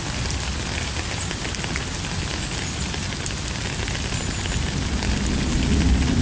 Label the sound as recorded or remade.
recorded